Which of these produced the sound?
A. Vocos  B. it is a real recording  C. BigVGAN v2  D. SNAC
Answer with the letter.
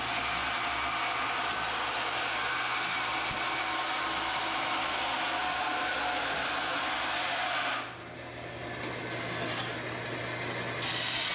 B